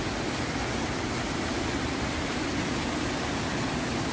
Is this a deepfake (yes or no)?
no